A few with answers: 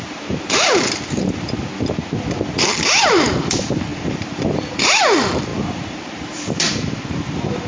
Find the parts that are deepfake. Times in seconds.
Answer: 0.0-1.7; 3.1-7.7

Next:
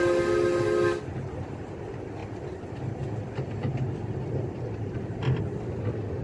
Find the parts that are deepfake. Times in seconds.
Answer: none

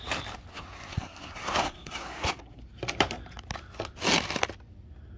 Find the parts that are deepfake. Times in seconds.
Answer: 0.5-2.6

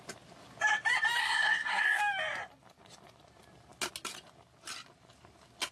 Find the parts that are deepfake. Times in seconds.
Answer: 1.2-2.0

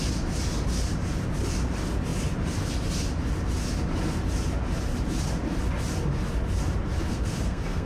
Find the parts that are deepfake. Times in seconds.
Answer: 7.1-7.9

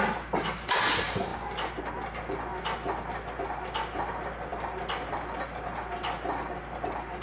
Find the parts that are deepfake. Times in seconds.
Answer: none